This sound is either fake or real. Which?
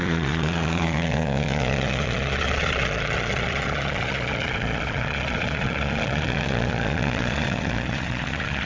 fake